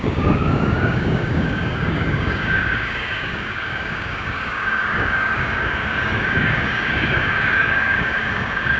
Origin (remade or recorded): remade